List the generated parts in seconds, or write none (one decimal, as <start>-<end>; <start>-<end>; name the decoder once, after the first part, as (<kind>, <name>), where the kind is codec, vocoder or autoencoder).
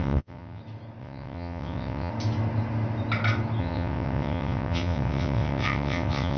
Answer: 0.0-0.6 (vocoder, WaveNeXt); 1.0-2.1; 3.6-6.4